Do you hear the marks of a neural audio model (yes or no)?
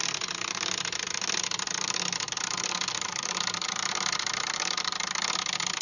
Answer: no